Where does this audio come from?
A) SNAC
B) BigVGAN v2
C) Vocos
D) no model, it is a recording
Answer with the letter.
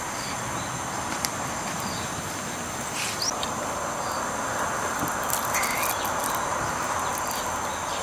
D